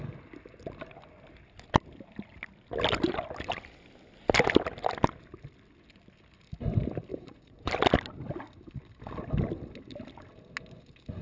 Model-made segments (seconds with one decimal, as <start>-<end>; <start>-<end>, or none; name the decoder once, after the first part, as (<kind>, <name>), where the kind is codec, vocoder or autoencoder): 7.1-7.7 (vocoder, Vocos)